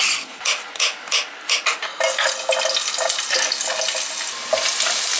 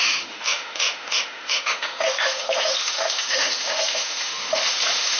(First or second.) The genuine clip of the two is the first